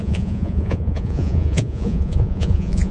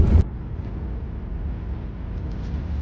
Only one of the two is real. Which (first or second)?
second